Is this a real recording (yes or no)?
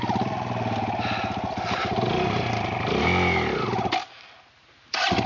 yes